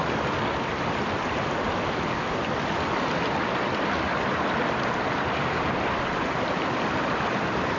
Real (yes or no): yes